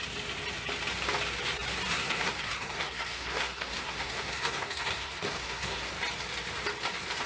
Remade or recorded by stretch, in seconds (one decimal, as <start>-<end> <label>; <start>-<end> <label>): 0.0-1.9 recorded; 1.9-5.8 remade; 5.8-7.3 recorded